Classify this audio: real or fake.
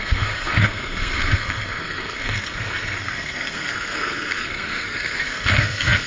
fake